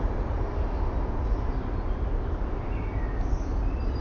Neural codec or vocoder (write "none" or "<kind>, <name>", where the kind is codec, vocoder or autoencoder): none